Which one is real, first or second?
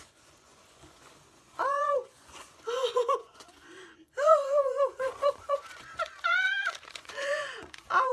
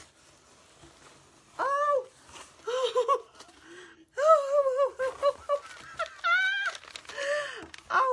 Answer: second